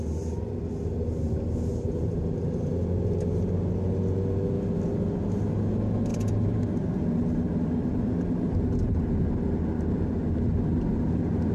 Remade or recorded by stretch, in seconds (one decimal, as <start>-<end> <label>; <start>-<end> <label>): 0.0-1.7 recorded; 1.7-2.3 remade; 2.3-6.1 recorded; 6.1-6.6 remade; 6.6-11.5 recorded